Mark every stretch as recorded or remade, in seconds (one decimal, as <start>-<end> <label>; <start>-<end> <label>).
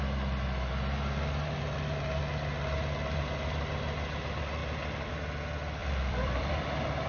0.0-4.6 recorded; 4.6-5.1 remade; 5.1-5.8 recorded; 5.8-6.5 remade; 6.5-7.1 recorded